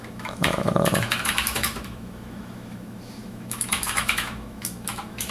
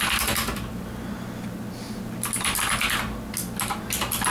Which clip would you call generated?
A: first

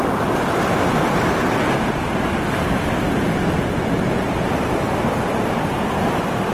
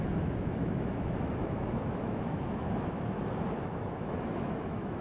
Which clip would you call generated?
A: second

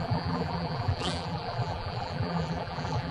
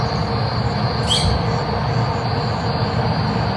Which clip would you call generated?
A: first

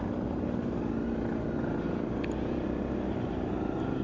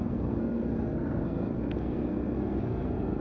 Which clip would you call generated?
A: second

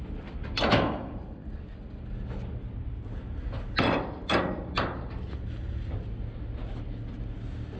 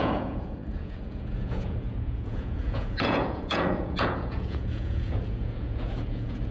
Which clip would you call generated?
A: second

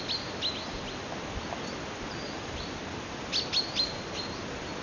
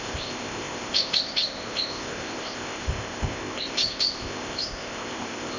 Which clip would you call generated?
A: second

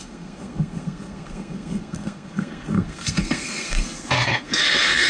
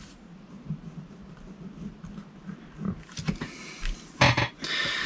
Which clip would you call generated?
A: first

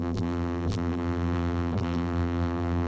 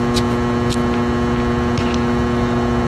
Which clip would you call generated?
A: first